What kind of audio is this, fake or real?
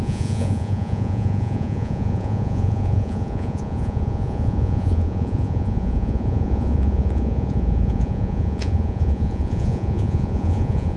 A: fake